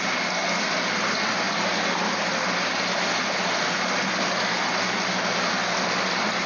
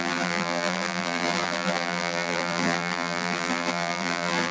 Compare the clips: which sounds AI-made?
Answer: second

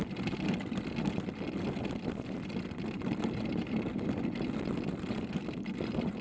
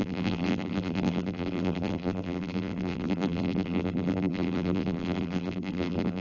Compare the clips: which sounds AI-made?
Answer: second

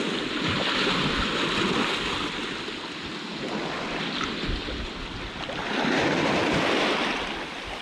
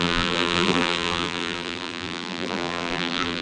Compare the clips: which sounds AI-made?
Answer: second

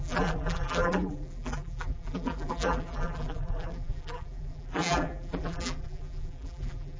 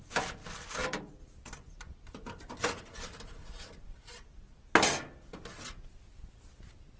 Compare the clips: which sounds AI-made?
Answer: first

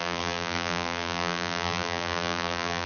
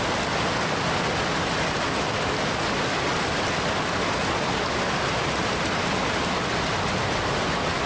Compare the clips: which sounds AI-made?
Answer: first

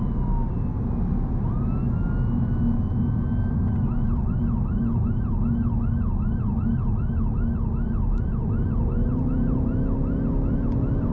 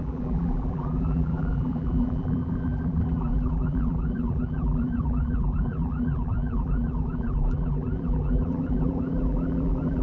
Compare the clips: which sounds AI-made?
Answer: second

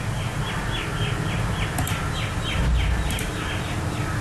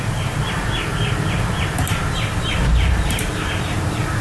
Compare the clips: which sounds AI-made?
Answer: second